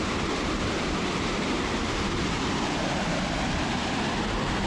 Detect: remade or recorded remade